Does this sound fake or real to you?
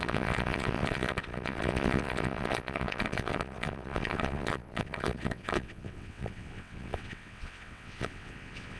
fake